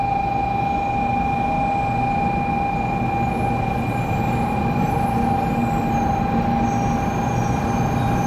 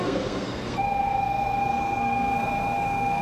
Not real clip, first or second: second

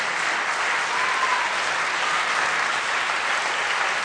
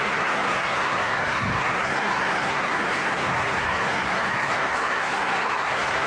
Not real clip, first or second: second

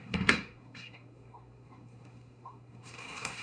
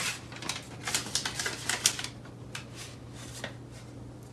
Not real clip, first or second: first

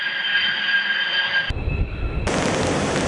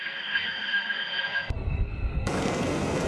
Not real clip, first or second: second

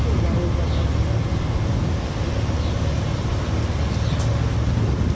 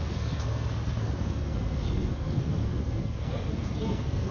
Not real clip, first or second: second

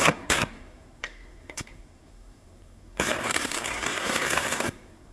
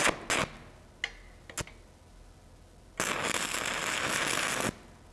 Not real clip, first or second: first